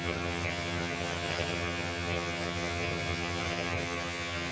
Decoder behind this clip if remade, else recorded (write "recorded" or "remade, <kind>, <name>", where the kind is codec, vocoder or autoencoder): remade, vocoder, HiFi-GAN